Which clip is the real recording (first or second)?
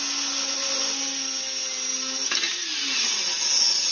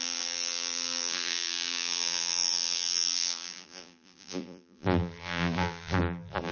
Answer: first